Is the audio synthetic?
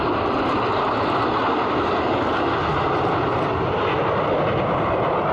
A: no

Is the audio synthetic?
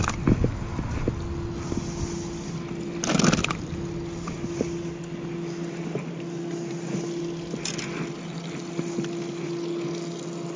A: no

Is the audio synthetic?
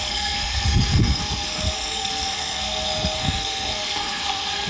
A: yes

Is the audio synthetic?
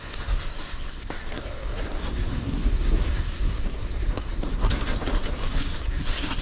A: yes